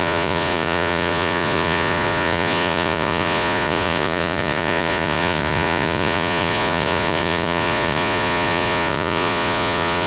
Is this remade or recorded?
remade